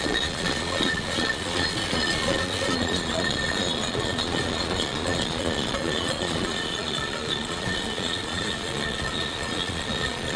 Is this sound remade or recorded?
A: remade